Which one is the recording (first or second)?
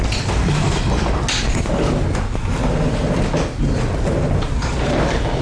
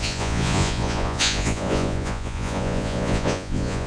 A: first